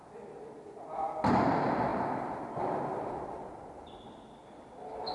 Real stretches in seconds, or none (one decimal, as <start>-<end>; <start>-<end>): 0.0-5.1